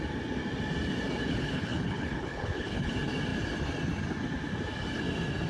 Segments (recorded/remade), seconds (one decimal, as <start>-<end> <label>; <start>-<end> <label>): 0.0-1.2 recorded; 1.2-2.9 remade; 2.9-5.5 recorded